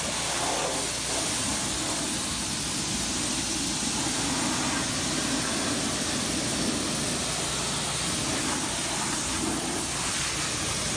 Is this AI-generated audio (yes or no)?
no